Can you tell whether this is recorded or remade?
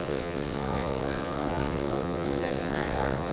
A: remade